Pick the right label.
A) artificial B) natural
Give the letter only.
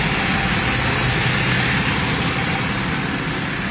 B